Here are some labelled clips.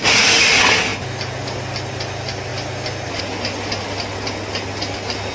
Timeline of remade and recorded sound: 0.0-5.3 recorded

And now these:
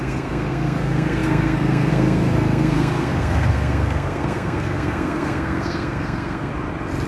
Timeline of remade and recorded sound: 0.0-6.5 remade; 6.5-7.1 recorded

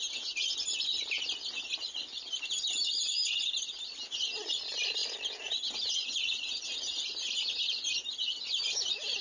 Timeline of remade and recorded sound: 0.0-9.2 recorded